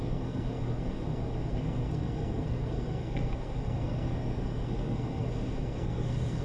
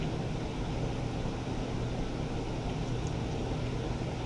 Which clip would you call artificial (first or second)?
first